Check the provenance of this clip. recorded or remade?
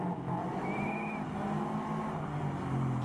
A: recorded